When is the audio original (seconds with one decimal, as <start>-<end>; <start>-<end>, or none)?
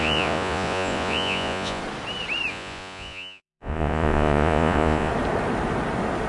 1.8-2.5; 5.1-6.3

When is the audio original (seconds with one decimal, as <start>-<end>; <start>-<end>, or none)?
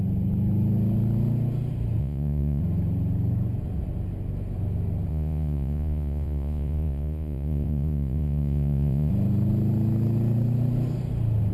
0.0-2.0; 2.6-5.1; 9.1-11.5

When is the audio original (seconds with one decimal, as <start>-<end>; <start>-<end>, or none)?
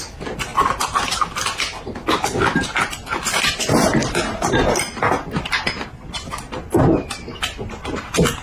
0.0-8.4